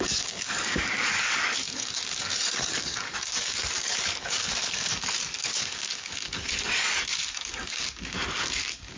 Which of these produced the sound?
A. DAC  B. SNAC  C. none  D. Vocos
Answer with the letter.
A